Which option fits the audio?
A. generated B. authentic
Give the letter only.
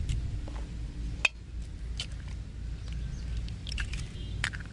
B